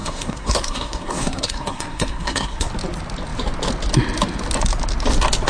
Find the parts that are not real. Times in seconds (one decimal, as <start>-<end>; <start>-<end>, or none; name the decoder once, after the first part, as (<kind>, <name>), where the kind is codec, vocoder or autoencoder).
0.0-2.7 (codec, SNAC)